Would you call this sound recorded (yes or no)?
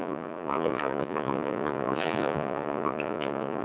no